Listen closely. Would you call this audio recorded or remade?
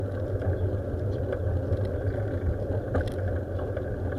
recorded